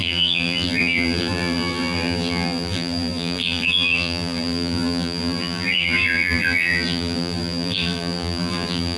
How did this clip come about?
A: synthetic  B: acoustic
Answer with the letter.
A